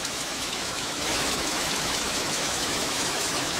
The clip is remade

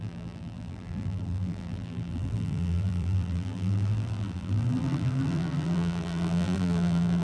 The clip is remade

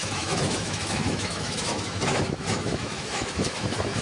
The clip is remade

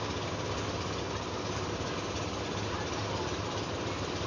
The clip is recorded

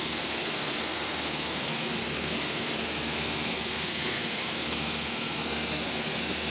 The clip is remade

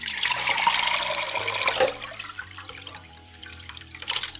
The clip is remade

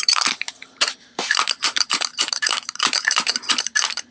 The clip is remade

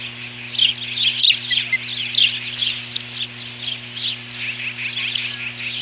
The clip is recorded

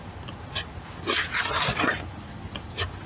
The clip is recorded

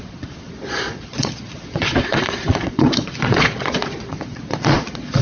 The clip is remade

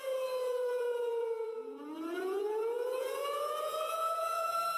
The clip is remade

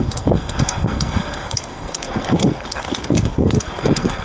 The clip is remade